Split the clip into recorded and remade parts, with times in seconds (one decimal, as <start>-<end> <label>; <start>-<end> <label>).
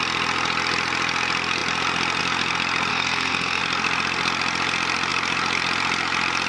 0.0-2.9 recorded; 2.9-3.6 remade; 3.6-6.5 recorded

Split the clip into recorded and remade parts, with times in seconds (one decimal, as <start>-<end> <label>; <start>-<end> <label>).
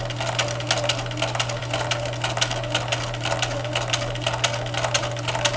0.0-5.6 recorded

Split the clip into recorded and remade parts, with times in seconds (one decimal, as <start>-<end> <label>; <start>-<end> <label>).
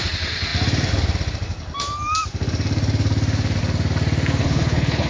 0.0-4.4 recorded; 4.4-5.1 remade